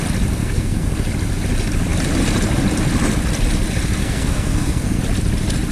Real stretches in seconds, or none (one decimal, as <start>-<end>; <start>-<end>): 0.0-0.4; 0.9-4.0; 5.0-5.7